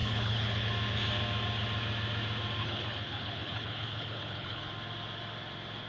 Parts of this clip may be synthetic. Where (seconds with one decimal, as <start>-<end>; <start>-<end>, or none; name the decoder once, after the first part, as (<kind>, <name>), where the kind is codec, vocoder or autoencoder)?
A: 0.0-0.7 (codec, HILCodec); 2.6-4.7